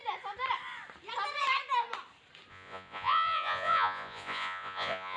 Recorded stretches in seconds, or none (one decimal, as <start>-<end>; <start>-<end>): 0.0-2.5